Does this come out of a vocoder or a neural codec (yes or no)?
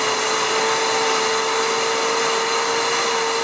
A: no